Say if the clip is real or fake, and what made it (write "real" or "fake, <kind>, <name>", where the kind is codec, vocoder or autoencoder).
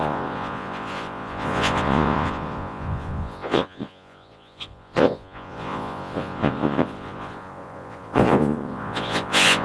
fake, vocoder, Vocos